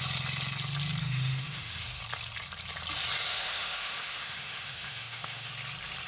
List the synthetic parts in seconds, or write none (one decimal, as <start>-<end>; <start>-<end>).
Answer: 1.0-2.0; 3.3-5.5

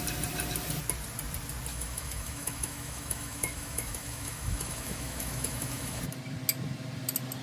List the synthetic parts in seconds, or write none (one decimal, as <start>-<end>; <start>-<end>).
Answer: 1.7-6.0

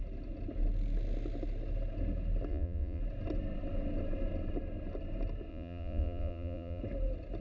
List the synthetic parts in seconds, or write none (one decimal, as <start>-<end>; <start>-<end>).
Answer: 2.5-3.0; 5.5-6.8

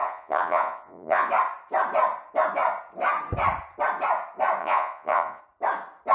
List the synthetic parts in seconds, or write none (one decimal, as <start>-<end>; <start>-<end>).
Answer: 0.0-1.3; 4.6-5.4

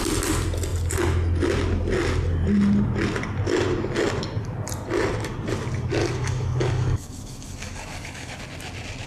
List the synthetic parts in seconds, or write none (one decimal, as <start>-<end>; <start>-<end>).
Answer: 6.0-8.4

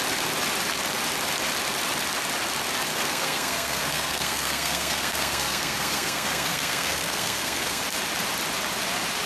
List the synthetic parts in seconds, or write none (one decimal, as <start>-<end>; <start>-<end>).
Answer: 2.9-7.8

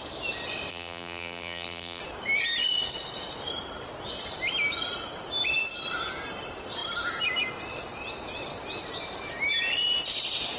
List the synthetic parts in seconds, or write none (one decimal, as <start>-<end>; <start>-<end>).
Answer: 0.7-2.0